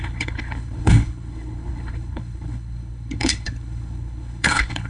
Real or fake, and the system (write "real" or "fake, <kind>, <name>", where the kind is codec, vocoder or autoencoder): fake, codec, HILCodec